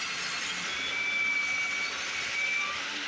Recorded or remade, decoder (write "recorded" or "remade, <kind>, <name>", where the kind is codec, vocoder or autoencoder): recorded